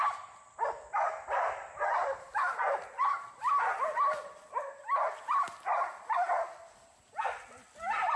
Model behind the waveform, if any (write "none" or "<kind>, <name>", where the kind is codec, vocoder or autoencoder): none